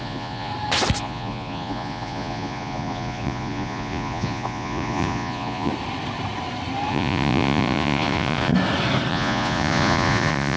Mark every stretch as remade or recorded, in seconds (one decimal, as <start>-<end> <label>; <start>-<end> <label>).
0.0-0.5 remade; 0.5-1.0 recorded; 1.0-5.7 remade; 5.7-6.9 recorded; 6.9-8.5 remade; 8.5-9.1 recorded; 9.1-10.6 remade